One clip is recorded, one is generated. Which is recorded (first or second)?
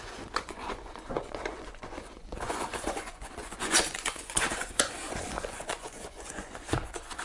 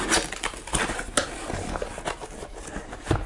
second